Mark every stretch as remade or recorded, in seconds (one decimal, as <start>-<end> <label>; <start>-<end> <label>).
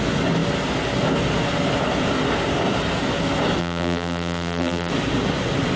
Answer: 0.0-3.6 recorded; 3.6-4.9 remade; 4.9-5.8 recorded